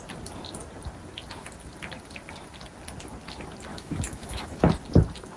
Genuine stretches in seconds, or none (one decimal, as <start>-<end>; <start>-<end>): 0.0-3.7; 4.7-5.4